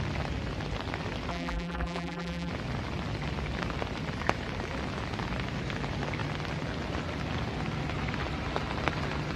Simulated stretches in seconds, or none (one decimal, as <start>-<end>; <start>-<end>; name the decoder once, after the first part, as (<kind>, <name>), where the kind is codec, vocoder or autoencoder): 1.3-2.5 (vocoder, BigVGAN v2)